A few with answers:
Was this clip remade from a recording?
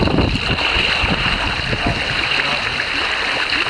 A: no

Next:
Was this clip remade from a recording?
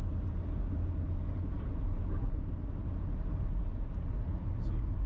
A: no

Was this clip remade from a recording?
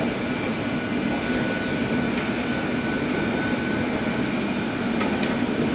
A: no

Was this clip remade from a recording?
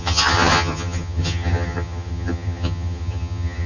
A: yes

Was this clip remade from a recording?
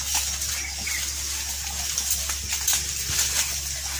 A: no